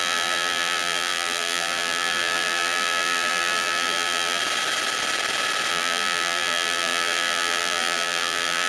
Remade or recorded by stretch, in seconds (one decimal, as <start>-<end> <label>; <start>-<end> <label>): 0.0-4.4 remade; 4.4-5.7 recorded; 5.7-8.7 remade